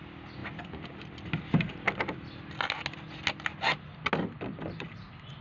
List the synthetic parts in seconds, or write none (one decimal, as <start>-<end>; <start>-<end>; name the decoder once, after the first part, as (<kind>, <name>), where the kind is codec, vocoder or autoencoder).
none